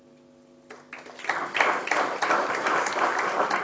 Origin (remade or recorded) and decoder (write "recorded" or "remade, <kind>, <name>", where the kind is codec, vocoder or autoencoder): recorded